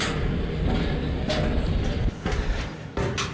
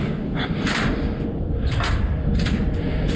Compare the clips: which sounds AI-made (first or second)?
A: second